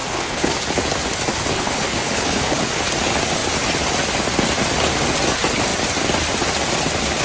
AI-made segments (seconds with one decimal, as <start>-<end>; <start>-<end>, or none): 0.0-0.5; 1.5-2.6